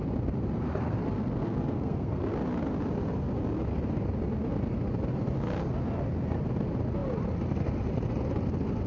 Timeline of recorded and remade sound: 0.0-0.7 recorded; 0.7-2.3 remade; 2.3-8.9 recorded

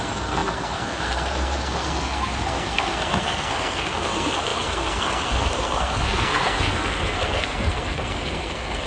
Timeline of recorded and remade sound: 0.0-8.9 remade